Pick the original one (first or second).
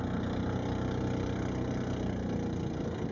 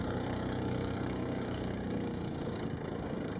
first